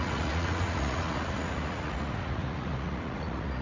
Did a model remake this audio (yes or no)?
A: yes